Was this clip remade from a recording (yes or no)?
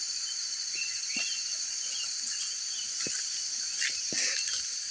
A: no